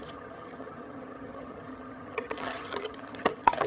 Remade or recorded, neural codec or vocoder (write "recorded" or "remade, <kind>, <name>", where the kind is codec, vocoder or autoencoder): remade, vocoder, HiFi-GAN